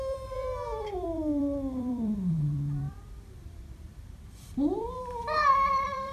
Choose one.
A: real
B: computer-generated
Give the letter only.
B